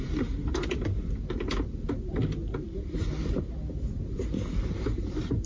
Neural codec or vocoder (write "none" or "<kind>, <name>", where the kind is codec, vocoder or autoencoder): none